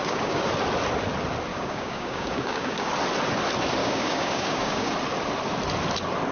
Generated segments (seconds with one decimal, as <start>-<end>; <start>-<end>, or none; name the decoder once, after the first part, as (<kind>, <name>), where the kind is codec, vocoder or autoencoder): 0.0-0.5 (codec, DAC); 1.5-2.9; 3.8-4.9